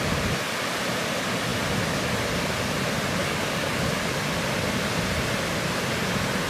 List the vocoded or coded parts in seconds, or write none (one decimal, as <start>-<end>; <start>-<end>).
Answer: 3.2-3.8